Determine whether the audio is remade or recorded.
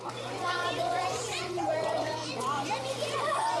remade